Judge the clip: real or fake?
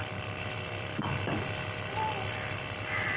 real